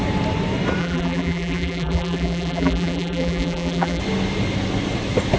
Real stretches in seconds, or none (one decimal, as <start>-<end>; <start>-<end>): 0.0-0.8; 4.0-5.4